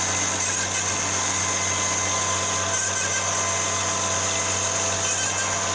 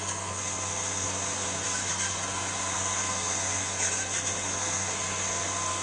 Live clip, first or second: first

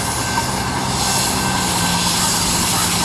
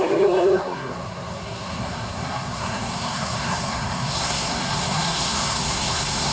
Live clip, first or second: first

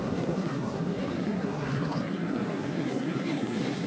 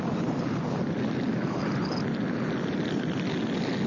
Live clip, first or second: second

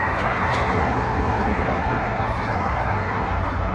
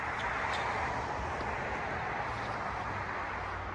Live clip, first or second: second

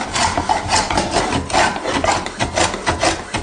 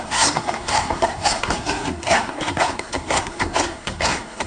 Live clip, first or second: first